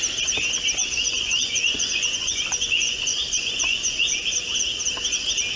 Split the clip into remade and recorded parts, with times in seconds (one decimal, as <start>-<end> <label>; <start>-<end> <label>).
0.0-0.8 recorded; 0.8-4.2 remade; 4.2-5.6 recorded

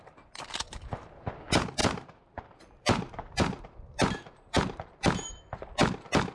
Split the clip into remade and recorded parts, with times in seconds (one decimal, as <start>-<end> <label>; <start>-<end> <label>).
0.0-1.8 recorded; 1.8-5.3 remade; 5.3-6.3 recorded

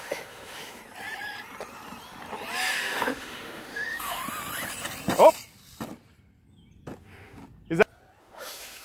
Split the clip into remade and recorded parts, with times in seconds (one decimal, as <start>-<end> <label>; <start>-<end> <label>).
0.0-0.8 remade; 0.8-2.7 recorded; 2.7-4.2 remade; 4.2-7.0 recorded; 7.0-7.4 remade; 7.4-8.2 recorded; 8.2-8.8 remade

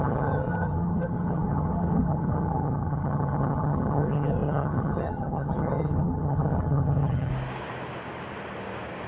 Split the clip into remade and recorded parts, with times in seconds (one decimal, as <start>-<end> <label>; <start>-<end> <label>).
0.0-7.3 remade; 7.3-9.1 recorded

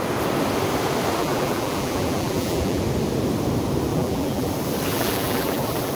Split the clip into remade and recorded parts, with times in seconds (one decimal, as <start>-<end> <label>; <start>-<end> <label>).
0.0-1.2 recorded; 1.2-2.8 remade; 2.8-3.9 recorded; 3.9-4.5 remade; 4.5-4.9 recorded; 4.9-5.9 remade

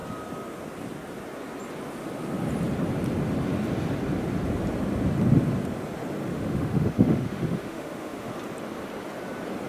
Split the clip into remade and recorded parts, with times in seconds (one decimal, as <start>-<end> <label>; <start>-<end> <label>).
0.0-6.3 recorded; 6.3-8.3 remade; 8.3-9.7 recorded

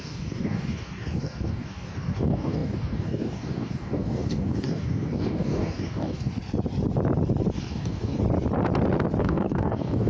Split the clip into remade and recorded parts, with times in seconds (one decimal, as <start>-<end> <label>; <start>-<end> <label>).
0.0-6.3 remade; 6.3-7.6 recorded; 7.6-8.2 remade; 8.2-9.2 recorded; 9.2-10.1 remade